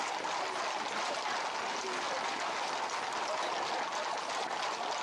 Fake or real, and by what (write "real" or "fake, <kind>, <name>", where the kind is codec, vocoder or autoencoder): real